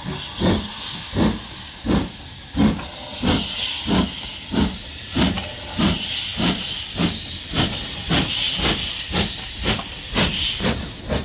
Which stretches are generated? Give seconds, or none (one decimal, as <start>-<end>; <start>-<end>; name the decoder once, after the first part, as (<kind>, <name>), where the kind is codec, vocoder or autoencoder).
none